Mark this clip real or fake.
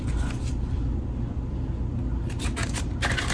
real